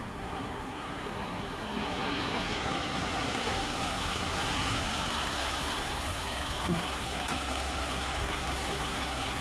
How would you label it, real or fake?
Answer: fake